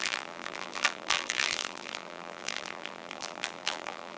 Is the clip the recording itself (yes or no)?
no